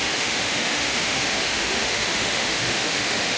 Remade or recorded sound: remade